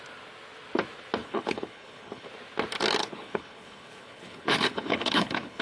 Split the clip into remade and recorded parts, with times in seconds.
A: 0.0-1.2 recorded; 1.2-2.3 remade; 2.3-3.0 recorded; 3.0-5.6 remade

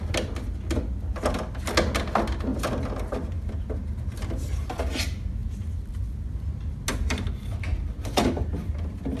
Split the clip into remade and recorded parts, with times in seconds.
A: 0.0-9.2 recorded

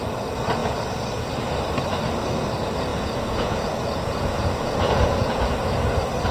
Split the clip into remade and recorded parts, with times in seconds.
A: 0.0-2.9 recorded; 2.9-5.5 remade; 5.5-6.3 recorded

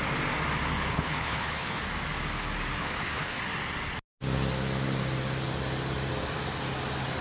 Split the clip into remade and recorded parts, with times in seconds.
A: 0.0-0.9 recorded; 0.9-1.8 remade; 1.8-2.8 recorded; 2.8-3.4 remade; 3.4-7.2 recorded

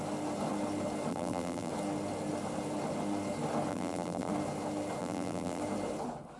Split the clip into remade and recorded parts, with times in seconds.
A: 0.0-1.1 recorded; 1.1-1.7 remade; 1.7-3.7 recorded; 3.7-4.3 remade; 4.3-5.0 recorded; 5.0-5.6 remade; 5.6-6.4 recorded

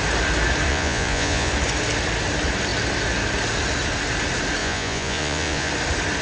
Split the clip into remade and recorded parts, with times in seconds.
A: 0.0-0.7 recorded; 0.7-1.5 remade; 1.5-4.6 recorded; 4.6-5.7 remade; 5.7-6.2 recorded

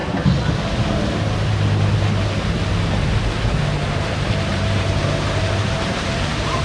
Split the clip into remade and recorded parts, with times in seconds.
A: 0.0-4.5 recorded; 4.5-6.6 remade